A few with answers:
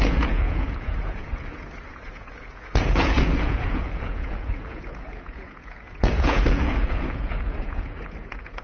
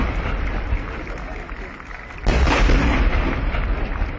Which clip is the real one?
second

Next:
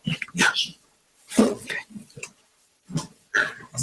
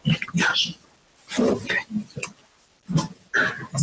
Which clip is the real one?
second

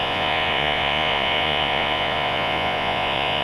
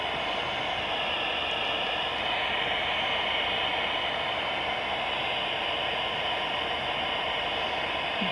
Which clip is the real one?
second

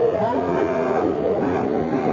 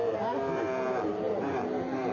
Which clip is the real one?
second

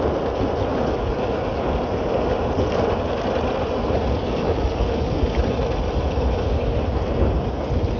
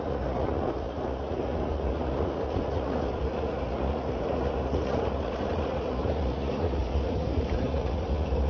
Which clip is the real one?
first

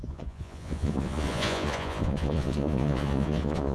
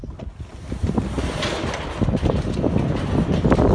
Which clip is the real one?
second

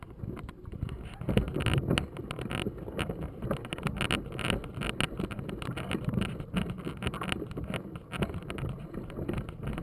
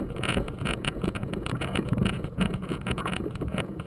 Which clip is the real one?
first